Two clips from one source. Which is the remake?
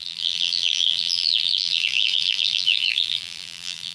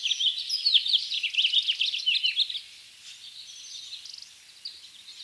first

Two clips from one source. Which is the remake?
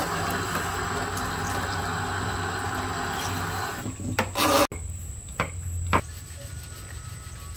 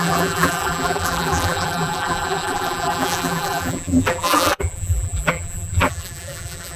second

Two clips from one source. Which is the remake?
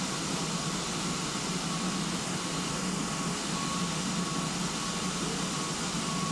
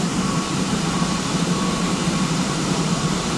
second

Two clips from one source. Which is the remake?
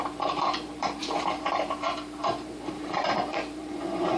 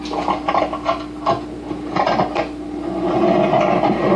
first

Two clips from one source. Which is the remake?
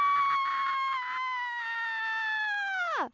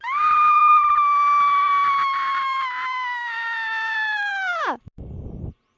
second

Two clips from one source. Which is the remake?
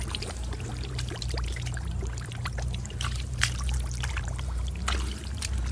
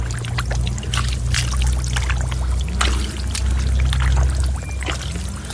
first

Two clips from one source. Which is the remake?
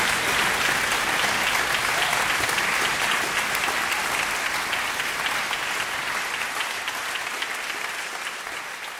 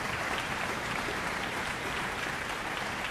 second